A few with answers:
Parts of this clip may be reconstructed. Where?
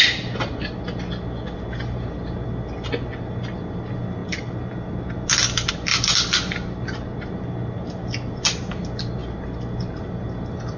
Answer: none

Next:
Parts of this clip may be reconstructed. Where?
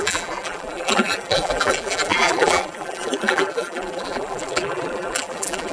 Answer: 0.0-5.7 (vocoder, BigVGAN v2)